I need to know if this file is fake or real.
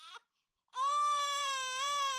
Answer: fake